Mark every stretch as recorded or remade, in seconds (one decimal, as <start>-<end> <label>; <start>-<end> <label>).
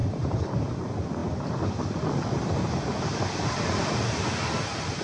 0.0-0.7 remade; 0.7-1.2 recorded; 1.2-4.2 remade; 4.2-5.0 recorded